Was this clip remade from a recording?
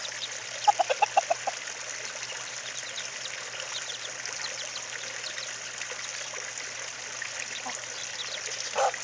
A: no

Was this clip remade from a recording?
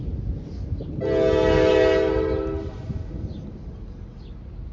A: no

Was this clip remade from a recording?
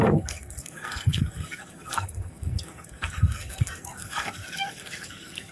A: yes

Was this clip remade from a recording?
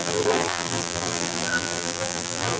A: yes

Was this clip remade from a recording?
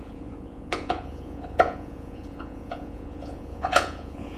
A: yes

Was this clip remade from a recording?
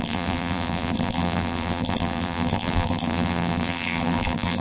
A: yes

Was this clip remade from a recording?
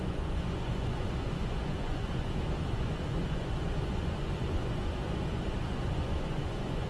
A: yes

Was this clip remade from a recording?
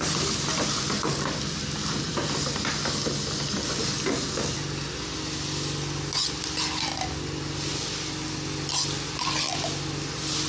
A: no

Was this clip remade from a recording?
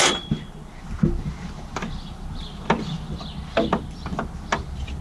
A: no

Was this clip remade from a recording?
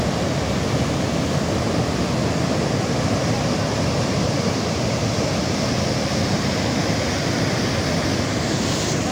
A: no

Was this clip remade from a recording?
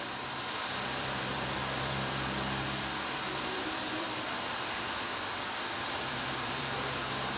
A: yes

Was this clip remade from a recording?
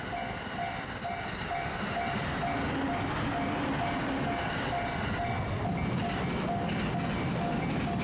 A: no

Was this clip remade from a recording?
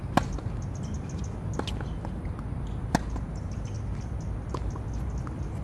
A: no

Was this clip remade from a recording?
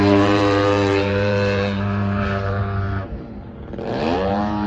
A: yes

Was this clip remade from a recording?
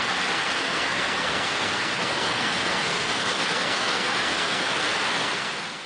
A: yes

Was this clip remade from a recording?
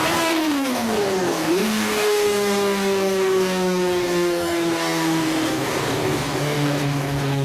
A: yes